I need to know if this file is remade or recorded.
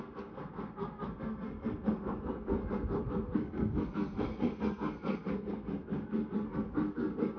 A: remade